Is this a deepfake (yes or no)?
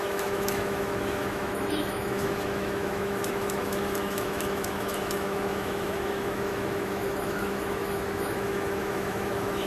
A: yes